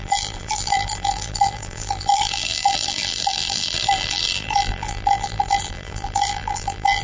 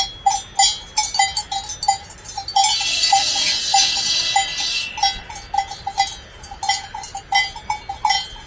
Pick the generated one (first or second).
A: first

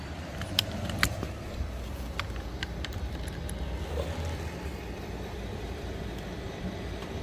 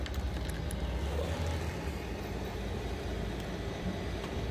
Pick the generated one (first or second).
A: first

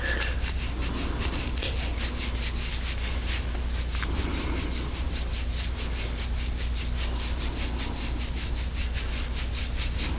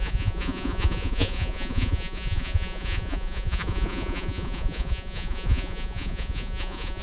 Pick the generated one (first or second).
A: second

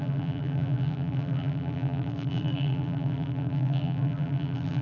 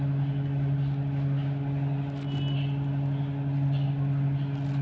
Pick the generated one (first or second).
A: first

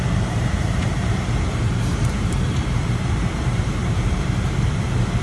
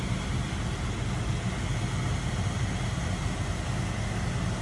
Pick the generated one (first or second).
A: first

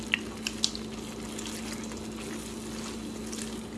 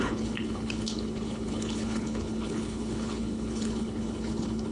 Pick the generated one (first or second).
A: second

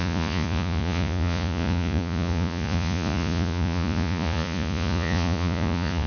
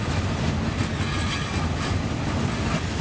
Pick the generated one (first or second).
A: first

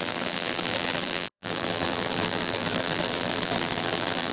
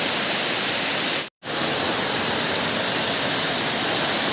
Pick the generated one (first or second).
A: first